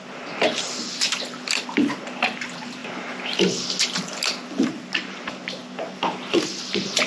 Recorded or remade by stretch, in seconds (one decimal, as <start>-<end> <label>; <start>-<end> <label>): 0.0-7.1 recorded